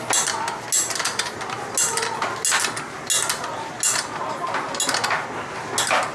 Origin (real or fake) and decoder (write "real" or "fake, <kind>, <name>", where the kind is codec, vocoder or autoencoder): real